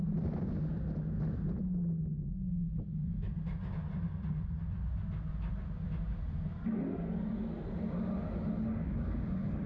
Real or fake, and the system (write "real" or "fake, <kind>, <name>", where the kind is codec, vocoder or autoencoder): real